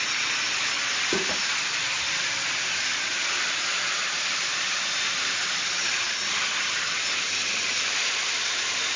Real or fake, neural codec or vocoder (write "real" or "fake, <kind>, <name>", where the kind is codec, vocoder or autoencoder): real